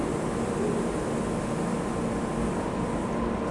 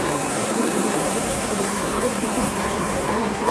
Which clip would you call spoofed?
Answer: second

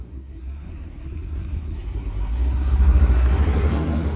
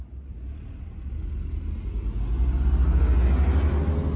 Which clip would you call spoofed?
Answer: first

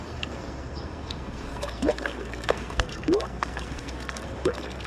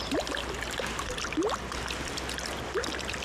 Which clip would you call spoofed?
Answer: first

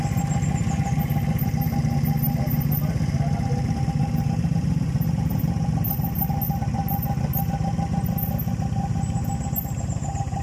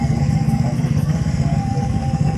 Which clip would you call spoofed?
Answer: second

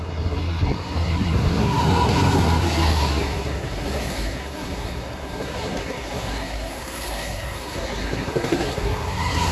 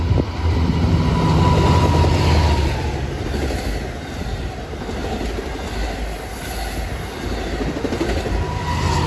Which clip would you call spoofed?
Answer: first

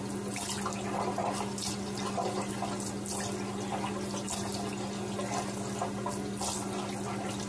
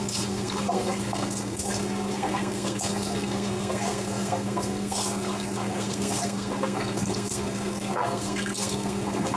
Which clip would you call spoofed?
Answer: second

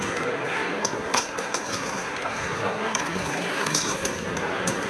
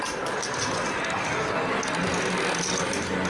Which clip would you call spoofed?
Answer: first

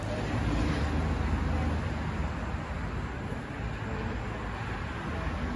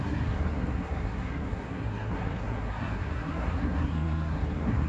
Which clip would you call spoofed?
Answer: second